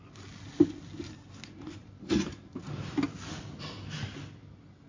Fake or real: real